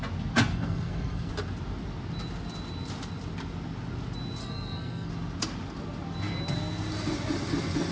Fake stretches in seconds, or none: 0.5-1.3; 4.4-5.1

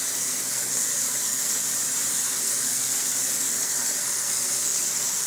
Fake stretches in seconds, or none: 0.0-1.6; 2.1-5.3